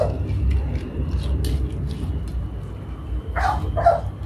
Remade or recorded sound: recorded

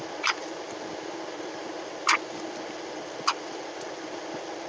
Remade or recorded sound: recorded